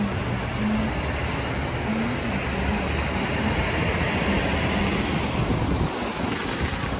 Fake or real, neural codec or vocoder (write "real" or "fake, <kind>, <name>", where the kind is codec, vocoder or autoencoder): real